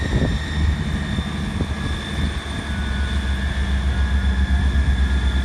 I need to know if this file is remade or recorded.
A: recorded